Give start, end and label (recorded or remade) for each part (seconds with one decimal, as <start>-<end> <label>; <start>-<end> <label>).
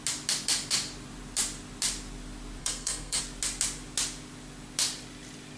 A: 0.0-2.6 recorded; 2.6-3.2 remade; 3.2-5.6 recorded